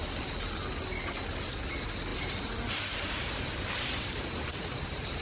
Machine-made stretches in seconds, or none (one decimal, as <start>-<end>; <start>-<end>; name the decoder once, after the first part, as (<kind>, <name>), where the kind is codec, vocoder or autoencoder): 2.1-5.2 (vocoder, BigVGAN v2)